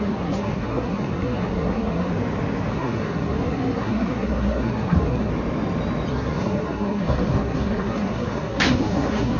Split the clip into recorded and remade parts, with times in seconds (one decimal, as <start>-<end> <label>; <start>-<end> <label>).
0.0-2.1 remade; 2.1-2.7 recorded; 2.7-5.3 remade; 5.3-6.1 recorded; 6.1-9.4 remade